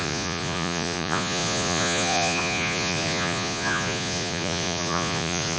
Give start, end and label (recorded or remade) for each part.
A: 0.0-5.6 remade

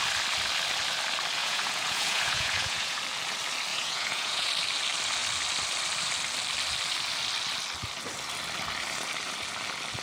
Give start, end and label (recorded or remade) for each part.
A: 0.0-1.4 recorded; 1.4-3.0 remade; 3.0-3.7 recorded; 3.7-4.5 remade; 4.5-10.0 recorded

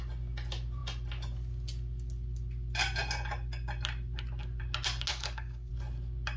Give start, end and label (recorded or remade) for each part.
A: 0.0-5.1 recorded; 5.1-5.7 remade; 5.7-6.4 recorded

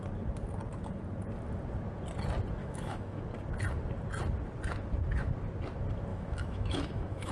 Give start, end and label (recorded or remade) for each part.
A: 0.0-2.6 recorded; 2.6-3.2 remade; 3.2-6.1 recorded; 6.1-7.3 remade